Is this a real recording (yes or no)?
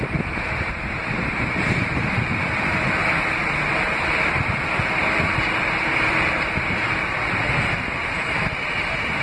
yes